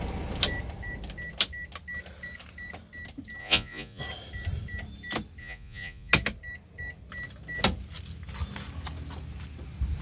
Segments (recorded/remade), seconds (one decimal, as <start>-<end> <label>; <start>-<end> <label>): 0.0-3.4 recorded; 3.4-4.0 remade; 4.0-5.4 recorded; 5.4-6.1 remade; 6.1-10.0 recorded